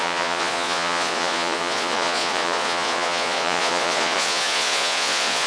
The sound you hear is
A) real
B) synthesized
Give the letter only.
B